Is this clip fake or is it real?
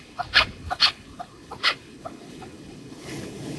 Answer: fake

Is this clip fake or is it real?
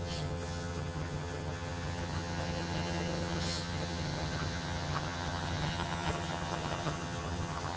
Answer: fake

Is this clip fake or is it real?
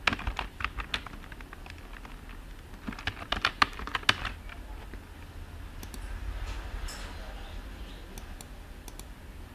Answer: real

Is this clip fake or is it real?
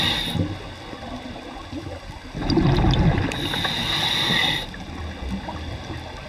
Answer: real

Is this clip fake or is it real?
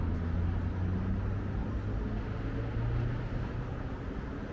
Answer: real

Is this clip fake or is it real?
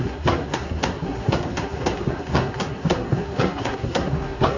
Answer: fake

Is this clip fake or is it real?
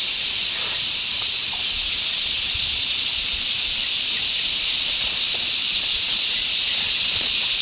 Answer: fake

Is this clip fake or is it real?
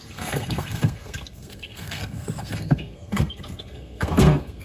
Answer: fake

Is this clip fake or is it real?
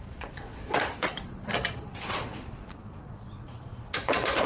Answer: fake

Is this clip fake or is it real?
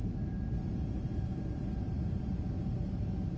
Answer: fake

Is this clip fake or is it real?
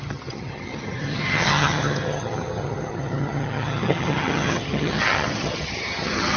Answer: fake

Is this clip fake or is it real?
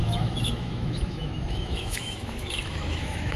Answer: fake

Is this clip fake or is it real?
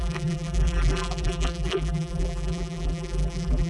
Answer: fake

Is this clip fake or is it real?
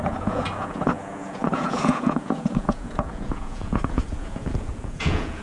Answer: fake